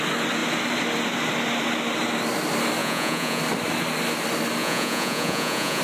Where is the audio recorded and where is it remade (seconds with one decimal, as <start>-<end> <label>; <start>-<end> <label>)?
0.0-2.8 recorded; 2.8-3.4 remade; 3.4-4.6 recorded; 4.6-5.8 remade